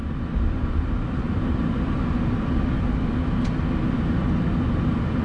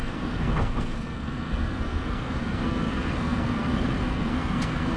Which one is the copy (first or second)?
second